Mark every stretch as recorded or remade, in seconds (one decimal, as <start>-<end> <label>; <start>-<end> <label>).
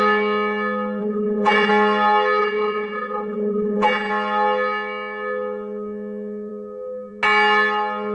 0.0-1.0 recorded; 1.0-1.7 remade; 1.7-2.4 recorded; 2.4-4.1 remade; 4.1-8.1 recorded